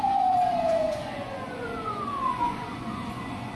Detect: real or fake fake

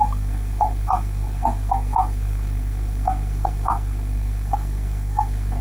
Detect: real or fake fake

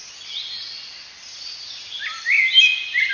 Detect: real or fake real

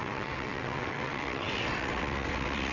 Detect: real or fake fake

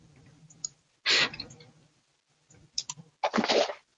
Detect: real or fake real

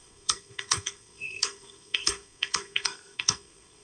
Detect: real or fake fake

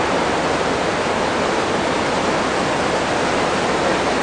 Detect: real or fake real